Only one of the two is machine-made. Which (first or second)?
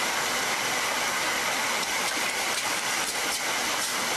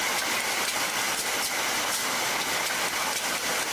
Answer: first